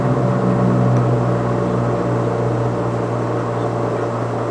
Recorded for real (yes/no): yes